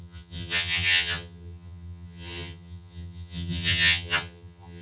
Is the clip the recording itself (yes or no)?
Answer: no